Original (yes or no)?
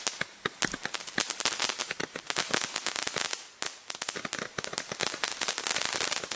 yes